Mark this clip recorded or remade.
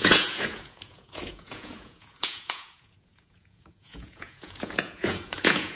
remade